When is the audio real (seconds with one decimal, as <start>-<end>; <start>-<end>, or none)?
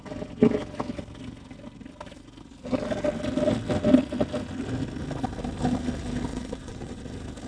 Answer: 0.0-6.3; 7.1-7.5